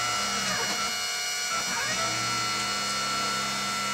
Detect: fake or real real